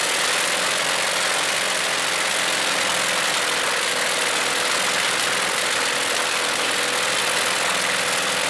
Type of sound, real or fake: real